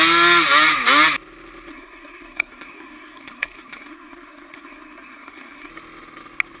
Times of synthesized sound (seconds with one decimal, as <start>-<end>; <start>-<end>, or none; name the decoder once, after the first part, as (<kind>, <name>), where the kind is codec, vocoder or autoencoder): 1.7-5.7 (codec, SNAC)